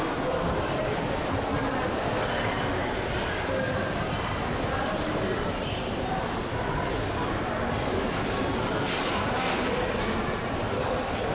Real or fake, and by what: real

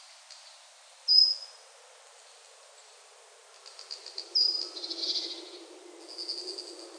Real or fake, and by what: real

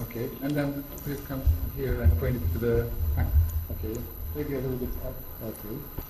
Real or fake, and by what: fake, codec, HILCodec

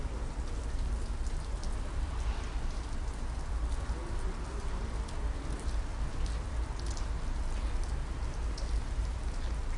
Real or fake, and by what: real